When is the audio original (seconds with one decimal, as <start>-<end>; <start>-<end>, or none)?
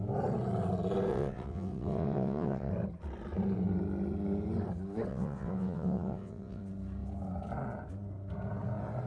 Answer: 0.0-1.1; 2.7-5.1; 6.6-9.1